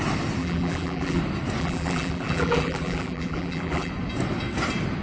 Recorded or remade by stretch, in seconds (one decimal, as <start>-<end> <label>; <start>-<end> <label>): 0.0-0.4 recorded; 0.4-1.2 remade; 1.2-1.6 recorded; 1.6-3.9 remade; 3.9-5.0 recorded